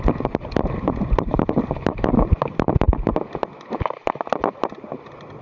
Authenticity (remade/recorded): recorded